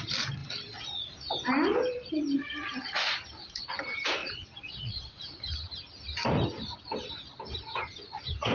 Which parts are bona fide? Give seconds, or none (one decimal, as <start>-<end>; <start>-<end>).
0.0-4.2; 5.2-8.5